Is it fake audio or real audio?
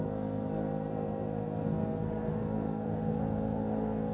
fake